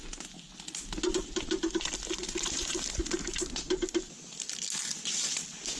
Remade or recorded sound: recorded